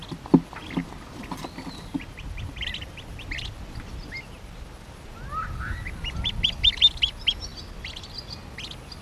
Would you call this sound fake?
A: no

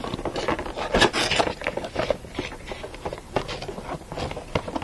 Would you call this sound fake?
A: no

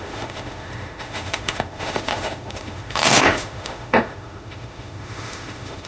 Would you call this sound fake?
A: yes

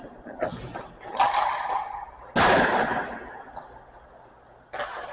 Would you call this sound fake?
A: no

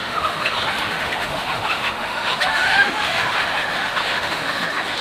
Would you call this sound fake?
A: yes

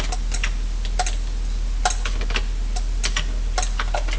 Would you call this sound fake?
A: no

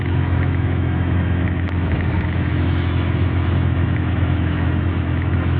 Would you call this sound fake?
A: yes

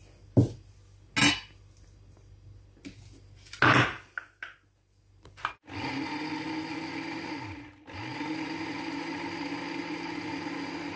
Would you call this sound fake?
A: no